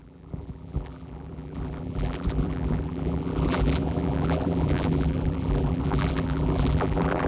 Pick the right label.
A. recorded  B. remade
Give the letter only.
B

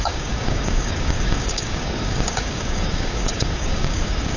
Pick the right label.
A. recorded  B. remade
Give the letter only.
B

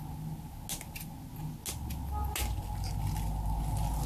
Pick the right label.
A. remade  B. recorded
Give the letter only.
B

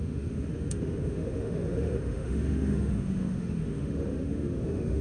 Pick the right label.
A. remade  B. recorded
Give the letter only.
A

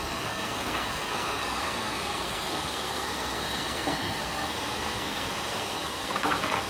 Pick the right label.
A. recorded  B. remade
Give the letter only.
B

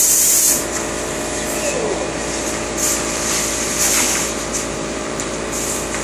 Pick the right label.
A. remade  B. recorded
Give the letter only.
A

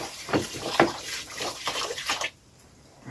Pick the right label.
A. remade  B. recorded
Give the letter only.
A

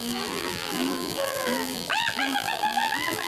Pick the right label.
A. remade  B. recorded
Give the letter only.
A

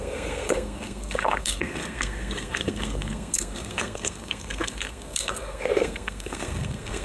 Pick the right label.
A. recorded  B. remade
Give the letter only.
B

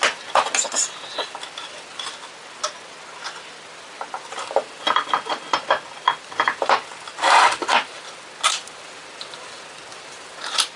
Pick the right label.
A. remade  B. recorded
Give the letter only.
B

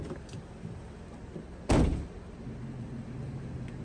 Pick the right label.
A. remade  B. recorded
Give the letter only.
B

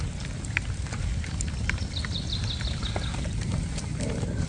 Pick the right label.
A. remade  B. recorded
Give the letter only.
A